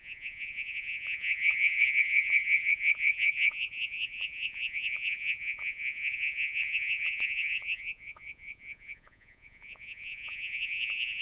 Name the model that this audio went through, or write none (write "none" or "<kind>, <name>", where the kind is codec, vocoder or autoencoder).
vocoder, Vocos